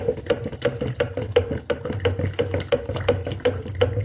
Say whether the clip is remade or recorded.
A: recorded